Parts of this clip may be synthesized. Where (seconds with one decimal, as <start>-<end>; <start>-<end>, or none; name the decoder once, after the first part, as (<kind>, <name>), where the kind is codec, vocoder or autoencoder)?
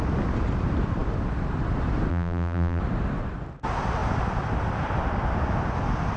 2.1-2.8 (vocoder, BigVGAN v2)